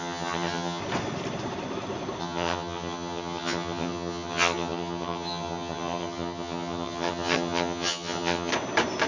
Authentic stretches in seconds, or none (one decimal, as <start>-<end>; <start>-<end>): 0.8-2.2; 8.5-9.1

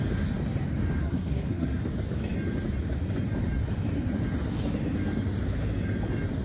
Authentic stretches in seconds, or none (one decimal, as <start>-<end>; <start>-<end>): 0.0-1.0; 1.8-6.4

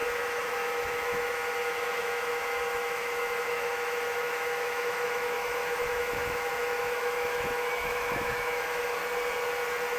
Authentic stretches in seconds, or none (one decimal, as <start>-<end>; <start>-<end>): 9.0-10.0

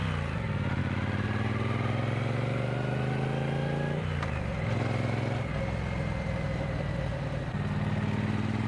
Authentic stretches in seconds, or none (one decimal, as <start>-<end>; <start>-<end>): 0.0-8.7

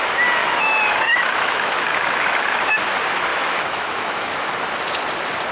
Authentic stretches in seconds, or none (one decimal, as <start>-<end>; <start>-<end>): 0.0-0.4; 2.6-3.3; 4.3-5.5